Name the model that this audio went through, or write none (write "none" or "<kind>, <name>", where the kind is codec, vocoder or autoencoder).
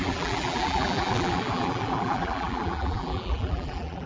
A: vocoder, BigVGAN v2